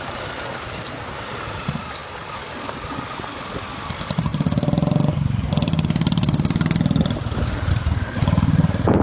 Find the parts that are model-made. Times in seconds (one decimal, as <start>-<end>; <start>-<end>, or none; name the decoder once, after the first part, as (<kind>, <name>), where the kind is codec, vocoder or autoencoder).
none

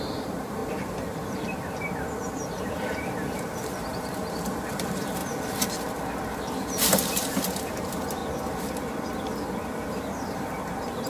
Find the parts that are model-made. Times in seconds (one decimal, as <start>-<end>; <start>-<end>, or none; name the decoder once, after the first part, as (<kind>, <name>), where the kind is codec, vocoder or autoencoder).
0.0-5.2 (vocoder, BigVGAN v2); 6.5-8.2; 9.9-11.1

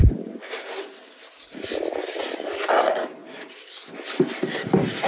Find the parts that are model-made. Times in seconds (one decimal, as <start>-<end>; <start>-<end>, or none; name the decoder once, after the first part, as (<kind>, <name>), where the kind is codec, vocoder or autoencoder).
0.0-0.4 (vocoder, BigVGAN v2); 2.2-3.2; 4.4-5.1

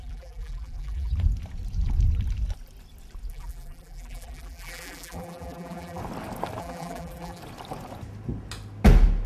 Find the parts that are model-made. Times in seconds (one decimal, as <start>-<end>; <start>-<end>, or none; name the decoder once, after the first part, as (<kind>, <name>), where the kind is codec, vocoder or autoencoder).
0.0-1.1 (vocoder, BigVGAN v2); 3.3-6.0; 6.6-7.4

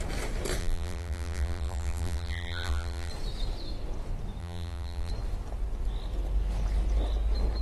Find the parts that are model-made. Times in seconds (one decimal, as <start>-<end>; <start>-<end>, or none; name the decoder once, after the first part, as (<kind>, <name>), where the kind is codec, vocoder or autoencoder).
0.6-3.1 (vocoder, BigVGAN v2); 4.4-5.1

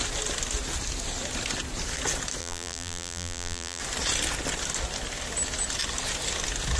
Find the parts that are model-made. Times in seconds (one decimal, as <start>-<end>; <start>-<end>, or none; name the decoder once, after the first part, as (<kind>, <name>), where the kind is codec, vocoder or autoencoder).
2.4-3.8 (vocoder, BigVGAN v2)

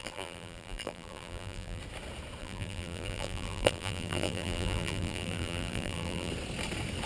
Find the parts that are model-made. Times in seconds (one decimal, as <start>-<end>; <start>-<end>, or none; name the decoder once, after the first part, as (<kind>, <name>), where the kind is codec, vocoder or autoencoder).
0.0-1.8 (vocoder, BigVGAN v2); 2.4-6.3